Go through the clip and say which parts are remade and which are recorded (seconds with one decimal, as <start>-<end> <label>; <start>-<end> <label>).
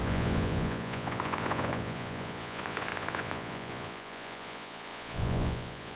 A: 0.0-6.0 remade